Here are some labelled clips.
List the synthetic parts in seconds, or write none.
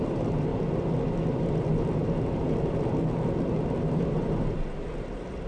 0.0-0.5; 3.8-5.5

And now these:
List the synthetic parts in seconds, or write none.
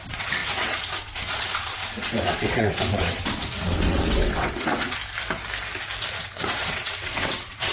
0.0-5.0; 6.1-7.7